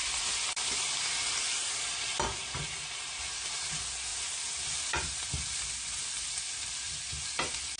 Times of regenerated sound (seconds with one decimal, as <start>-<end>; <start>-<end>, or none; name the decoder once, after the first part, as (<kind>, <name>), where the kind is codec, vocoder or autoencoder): none